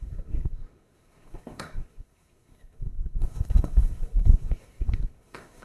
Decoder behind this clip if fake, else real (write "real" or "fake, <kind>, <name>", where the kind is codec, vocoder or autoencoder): fake, codec, SNAC